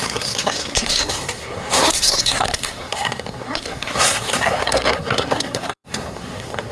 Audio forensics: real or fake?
fake